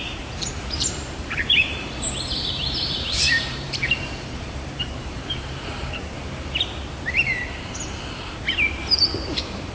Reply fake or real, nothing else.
fake